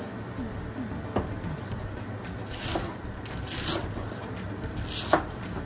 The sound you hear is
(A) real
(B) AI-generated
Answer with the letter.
A